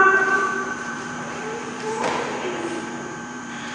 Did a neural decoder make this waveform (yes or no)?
yes